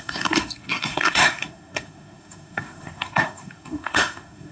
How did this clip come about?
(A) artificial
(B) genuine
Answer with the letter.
A